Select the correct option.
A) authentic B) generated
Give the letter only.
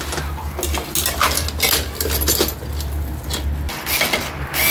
A